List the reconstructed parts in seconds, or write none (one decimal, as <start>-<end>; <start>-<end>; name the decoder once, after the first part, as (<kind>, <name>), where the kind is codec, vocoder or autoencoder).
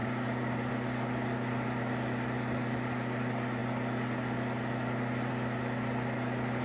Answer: none